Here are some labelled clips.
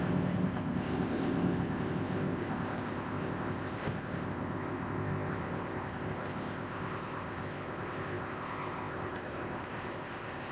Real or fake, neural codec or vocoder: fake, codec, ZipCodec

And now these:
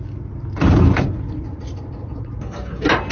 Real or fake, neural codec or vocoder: real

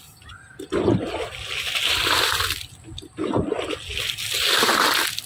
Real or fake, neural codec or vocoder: real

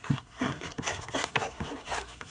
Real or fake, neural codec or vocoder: fake, codec, SNAC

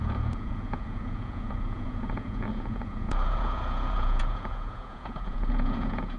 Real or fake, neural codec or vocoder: fake, vocoder, Vocos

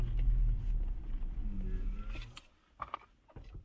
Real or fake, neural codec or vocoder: real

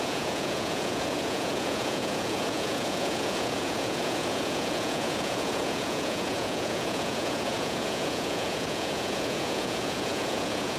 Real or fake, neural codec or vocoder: fake, vocoder, Vocos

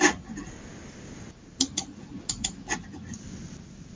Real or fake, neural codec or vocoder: real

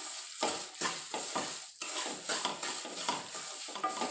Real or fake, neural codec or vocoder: real